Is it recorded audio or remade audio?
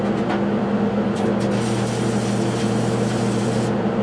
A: recorded